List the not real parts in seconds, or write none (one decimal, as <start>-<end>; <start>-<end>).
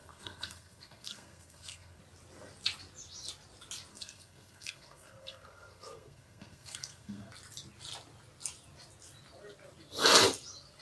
0.0-2.0; 3.9-7.3